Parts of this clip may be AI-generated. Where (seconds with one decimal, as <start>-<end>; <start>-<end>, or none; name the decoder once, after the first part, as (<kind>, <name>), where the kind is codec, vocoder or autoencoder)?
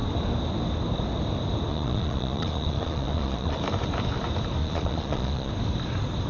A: 1.7-3.6 (vocoder, Vocos); 4.6-5.5